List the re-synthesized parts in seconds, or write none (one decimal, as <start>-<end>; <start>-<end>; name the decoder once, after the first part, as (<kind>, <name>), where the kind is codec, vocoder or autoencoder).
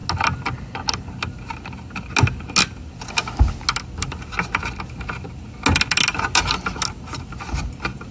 none